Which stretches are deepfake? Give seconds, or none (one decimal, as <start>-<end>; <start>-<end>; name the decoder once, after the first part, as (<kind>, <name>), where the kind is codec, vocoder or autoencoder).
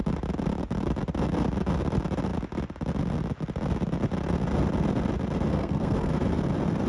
5.5-6.1 (codec, SNAC)